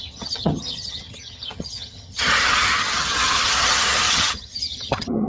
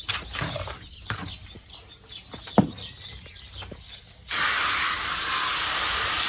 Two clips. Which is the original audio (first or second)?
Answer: second